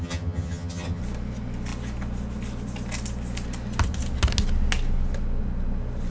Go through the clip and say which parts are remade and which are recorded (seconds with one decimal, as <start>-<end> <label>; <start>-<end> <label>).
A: 0.0-1.0 remade; 1.0-6.1 recorded